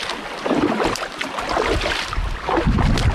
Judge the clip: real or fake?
real